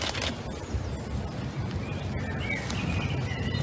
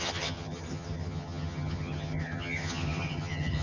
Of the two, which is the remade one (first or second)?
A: second